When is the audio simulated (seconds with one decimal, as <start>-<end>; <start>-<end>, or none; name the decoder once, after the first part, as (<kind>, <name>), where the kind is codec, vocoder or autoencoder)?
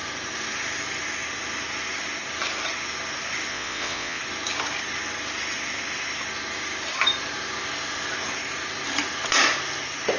3.5-4.2 (vocoder, WaveNeXt)